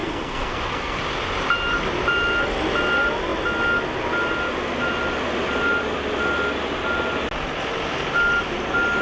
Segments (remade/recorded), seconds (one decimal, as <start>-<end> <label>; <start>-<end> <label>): 0.0-1.0 remade; 1.0-9.0 recorded